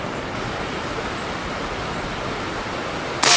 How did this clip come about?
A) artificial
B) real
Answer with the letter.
B